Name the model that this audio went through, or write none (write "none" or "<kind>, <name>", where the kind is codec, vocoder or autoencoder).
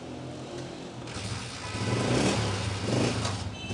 none